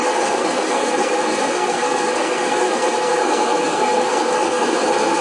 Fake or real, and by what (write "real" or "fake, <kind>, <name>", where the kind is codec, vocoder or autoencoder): fake, codec, SNAC